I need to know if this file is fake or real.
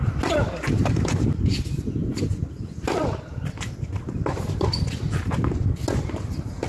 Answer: real